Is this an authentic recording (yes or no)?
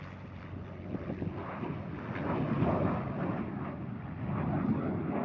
yes